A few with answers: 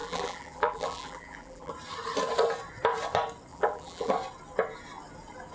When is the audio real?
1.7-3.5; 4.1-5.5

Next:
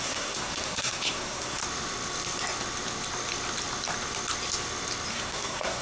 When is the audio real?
1.6-5.1

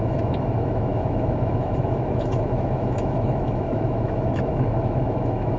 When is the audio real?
none

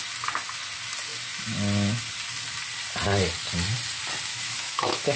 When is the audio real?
0.0-4.3

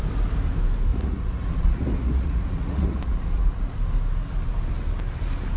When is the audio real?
0.0-0.9; 3.7-5.6

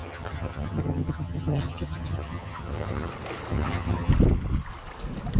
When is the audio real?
3.1-3.5; 4.1-5.4